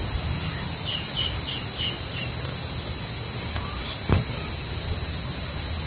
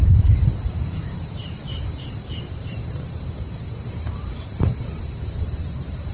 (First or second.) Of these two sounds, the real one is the first